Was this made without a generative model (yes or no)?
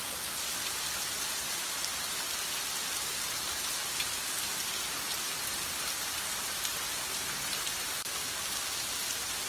yes